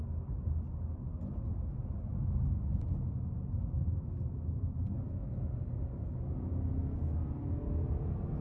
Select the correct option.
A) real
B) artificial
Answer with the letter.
A